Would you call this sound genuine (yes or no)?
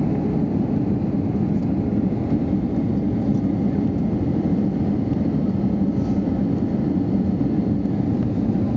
yes